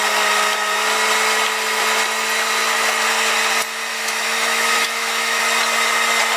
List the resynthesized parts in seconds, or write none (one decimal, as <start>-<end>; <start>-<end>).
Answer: 3.9-5.4